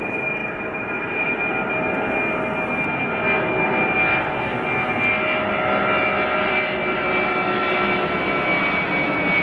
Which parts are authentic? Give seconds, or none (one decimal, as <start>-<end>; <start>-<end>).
0.0-0.4; 1.7-9.4